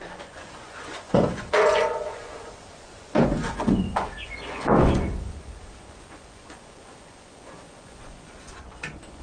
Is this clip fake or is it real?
fake